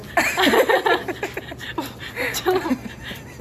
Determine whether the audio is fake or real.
real